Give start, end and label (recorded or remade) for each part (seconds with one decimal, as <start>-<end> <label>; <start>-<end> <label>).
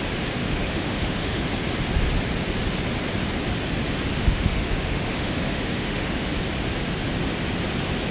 0.0-0.4 recorded; 0.4-1.4 remade; 1.4-4.1 recorded; 4.1-6.3 remade; 6.3-8.1 recorded